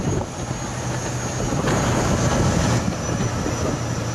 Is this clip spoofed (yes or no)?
no